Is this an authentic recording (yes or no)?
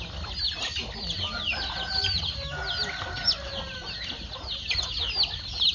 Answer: yes